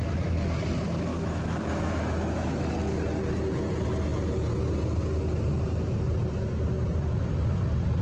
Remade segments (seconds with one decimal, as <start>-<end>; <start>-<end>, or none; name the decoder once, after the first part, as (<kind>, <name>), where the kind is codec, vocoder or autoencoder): 1.1-2.7 (autoencoder, DAC-VAE)